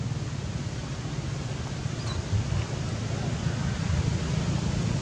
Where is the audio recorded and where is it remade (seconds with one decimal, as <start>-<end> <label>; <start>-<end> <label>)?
0.0-5.0 recorded